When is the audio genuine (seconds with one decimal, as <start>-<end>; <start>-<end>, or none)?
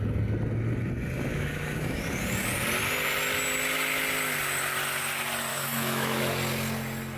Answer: 0.0-1.3; 2.0-5.5; 6.2-7.2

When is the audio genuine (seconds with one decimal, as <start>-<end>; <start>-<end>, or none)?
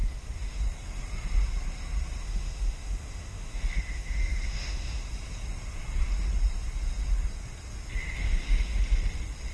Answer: 0.6-2.2; 5.1-8.2; 8.8-9.5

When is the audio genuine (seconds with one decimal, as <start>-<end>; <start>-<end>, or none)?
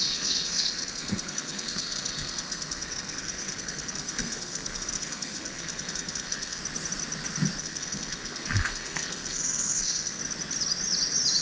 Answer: 6.6-7.6; 10.2-11.4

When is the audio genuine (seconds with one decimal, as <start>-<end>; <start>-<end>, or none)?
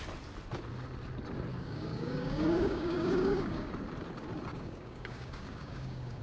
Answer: 0.0-1.5; 3.7-4.5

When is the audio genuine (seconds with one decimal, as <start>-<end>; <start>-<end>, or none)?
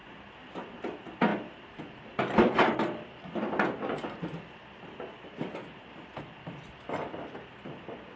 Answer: 0.0-1.3; 6.2-8.2